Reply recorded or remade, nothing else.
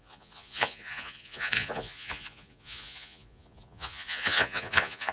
remade